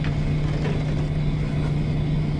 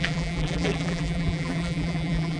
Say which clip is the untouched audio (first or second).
first